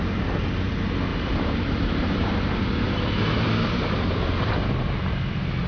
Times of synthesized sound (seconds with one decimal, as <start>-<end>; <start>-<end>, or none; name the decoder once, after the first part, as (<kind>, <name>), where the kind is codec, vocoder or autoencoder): 1.1-4.5 (vocoder, BigVGAN v2)